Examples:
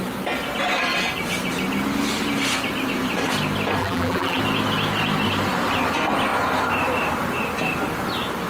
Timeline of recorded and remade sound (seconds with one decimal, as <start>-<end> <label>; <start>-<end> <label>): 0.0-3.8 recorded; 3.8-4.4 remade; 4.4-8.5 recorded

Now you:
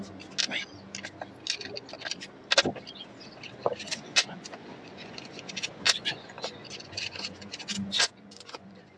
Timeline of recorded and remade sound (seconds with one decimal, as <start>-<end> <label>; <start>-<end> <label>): 0.0-3.8 recorded; 3.8-9.0 remade

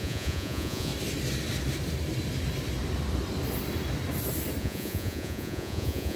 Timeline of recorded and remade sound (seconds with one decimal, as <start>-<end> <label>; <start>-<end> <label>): 0.0-0.9 remade; 0.9-4.6 recorded; 4.6-6.2 remade

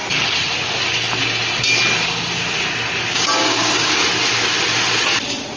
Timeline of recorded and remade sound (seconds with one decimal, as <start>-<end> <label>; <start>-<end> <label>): 0.0-3.1 recorded; 3.1-4.0 remade; 4.0-5.6 recorded

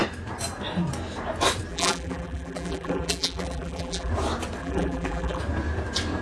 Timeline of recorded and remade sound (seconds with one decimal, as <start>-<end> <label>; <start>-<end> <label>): 0.0-1.7 recorded; 1.7-4.1 remade; 4.1-4.6 recorded; 4.6-5.4 remade; 5.4-6.2 recorded

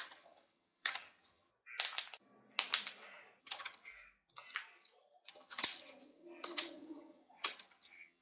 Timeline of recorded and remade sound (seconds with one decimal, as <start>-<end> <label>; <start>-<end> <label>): 0.0-1.5 remade; 1.5-3.4 recorded; 3.4-3.9 remade; 3.9-5.3 recorded; 5.3-8.2 remade

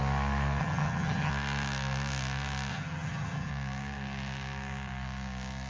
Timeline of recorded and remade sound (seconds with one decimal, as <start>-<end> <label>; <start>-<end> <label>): 0.0-0.6 recorded; 0.6-1.3 remade; 1.3-2.7 recorded; 2.7-3.5 remade; 3.5-5.7 recorded